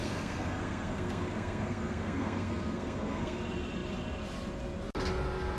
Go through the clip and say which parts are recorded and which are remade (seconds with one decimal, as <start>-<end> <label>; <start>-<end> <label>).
0.0-3.4 remade; 3.4-5.6 recorded